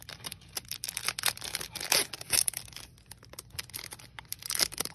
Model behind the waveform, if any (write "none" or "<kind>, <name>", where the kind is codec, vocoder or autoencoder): none